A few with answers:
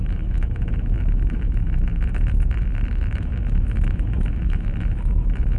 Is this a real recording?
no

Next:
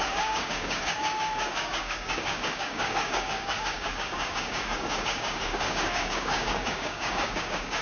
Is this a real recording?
no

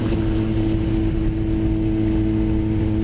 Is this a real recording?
yes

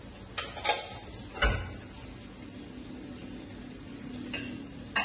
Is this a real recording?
yes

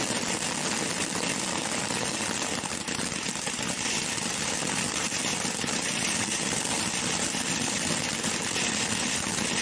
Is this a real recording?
yes